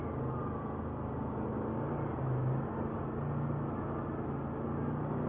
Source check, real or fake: real